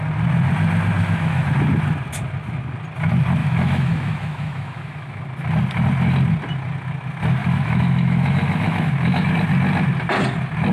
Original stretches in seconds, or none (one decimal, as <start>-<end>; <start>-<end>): 0.0-1.0; 1.5-3.4; 5.2-7.4; 9.3-10.7